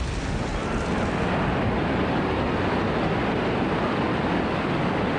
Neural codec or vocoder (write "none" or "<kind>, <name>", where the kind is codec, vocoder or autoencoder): none